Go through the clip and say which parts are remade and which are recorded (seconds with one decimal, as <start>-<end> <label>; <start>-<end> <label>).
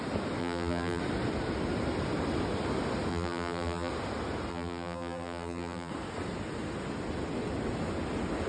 0.0-0.4 recorded; 0.4-1.0 remade; 1.0-3.1 recorded; 3.1-3.9 remade; 3.9-4.5 recorded; 4.5-5.9 remade; 5.9-8.5 recorded